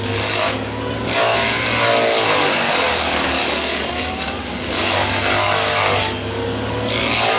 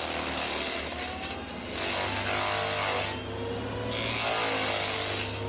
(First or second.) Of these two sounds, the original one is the second